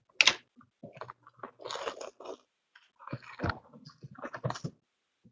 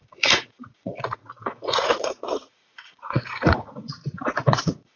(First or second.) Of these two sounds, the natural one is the first